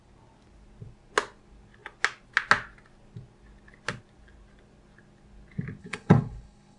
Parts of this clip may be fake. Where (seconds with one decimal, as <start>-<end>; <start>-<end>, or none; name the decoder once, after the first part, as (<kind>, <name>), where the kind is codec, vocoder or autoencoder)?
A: 5.8-6.8 (codec, HILCodec)